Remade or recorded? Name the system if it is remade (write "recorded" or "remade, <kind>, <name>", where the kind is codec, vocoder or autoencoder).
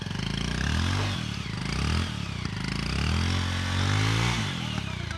recorded